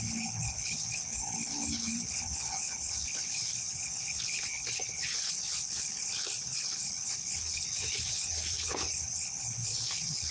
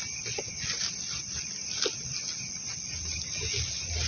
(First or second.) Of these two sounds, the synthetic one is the first